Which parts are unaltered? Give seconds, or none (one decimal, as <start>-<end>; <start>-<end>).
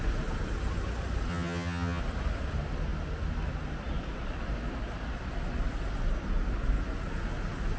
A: 0.0-1.3; 2.0-7.8